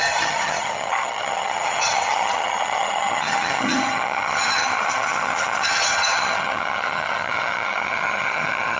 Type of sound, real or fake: fake